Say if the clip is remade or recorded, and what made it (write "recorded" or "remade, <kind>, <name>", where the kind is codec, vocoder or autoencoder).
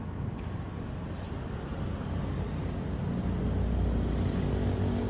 recorded